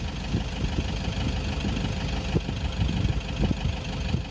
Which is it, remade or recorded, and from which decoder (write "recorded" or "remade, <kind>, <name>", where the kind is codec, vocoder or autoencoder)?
recorded